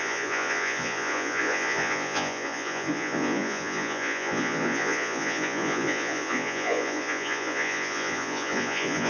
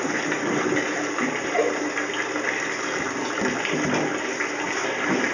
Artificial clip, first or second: first